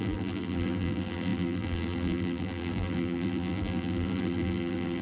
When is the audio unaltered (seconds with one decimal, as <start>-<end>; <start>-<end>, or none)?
none